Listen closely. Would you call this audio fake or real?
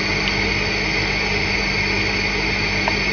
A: real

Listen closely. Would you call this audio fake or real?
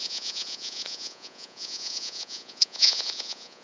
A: fake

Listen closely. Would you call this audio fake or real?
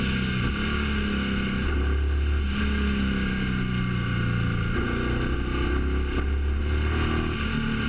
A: real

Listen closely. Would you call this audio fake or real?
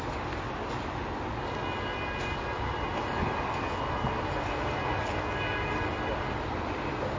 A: real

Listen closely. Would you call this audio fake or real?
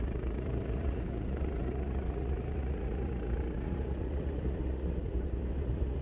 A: fake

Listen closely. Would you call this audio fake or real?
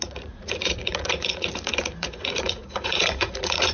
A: fake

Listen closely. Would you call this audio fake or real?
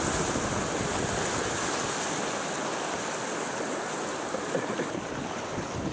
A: real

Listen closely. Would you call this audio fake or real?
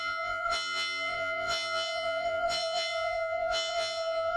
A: fake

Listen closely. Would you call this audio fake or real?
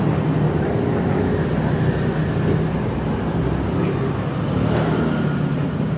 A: real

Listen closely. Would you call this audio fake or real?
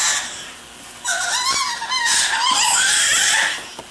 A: real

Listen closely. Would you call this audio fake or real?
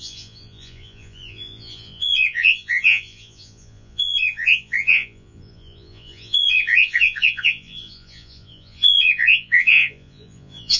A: fake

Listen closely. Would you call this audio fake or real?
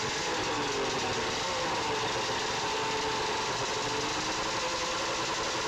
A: real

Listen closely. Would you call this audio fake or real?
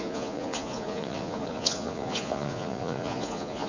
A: fake